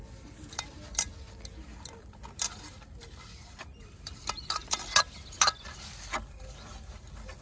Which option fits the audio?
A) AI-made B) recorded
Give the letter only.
B